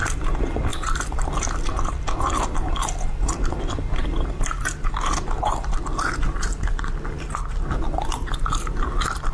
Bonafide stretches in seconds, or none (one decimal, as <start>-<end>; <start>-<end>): 0.0-9.3